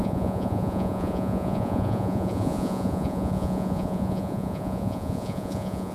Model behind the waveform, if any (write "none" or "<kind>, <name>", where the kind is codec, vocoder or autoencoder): vocoder, Vocos